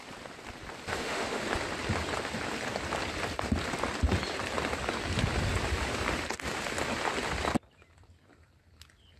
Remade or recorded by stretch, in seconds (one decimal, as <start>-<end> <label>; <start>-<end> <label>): 0.0-0.9 recorded; 0.9-1.4 remade; 1.4-9.2 recorded